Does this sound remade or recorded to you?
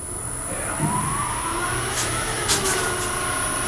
recorded